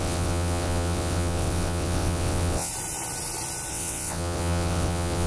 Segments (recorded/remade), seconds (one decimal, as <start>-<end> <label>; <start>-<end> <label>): 0.0-2.7 remade; 2.7-3.7 recorded; 3.7-5.3 remade

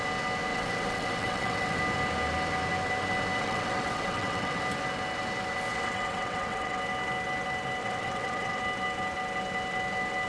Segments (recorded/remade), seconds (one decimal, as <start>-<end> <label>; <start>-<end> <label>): 0.0-0.5 recorded; 0.5-1.8 remade; 1.8-3.4 recorded; 3.4-4.6 remade; 4.6-5.7 recorded; 5.7-6.8 remade; 6.8-7.8 recorded; 7.8-8.6 remade; 8.6-10.3 recorded

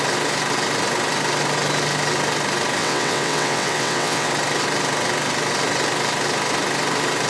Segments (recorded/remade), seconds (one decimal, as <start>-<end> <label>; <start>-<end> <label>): 0.0-2.8 recorded; 2.8-4.3 remade; 4.3-7.3 recorded